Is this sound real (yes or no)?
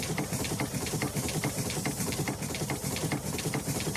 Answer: no